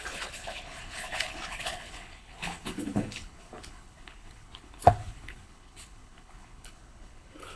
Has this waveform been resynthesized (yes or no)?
yes